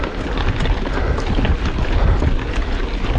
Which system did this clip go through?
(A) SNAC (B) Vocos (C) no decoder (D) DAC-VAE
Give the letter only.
C